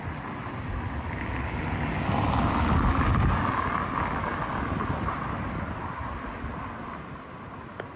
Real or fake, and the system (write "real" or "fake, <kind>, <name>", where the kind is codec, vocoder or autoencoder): real